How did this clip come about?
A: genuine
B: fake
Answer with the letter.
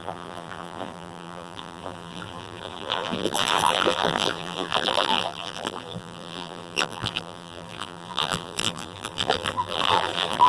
B